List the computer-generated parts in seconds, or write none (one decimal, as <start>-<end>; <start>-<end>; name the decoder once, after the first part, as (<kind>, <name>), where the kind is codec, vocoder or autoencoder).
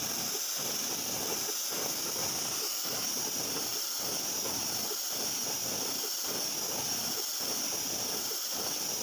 0.0-9.0 (vocoder, BigVGAN v2)